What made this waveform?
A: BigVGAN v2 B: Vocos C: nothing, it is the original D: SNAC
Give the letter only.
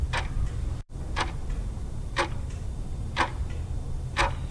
A